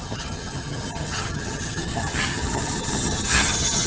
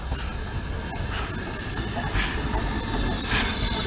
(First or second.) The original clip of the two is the second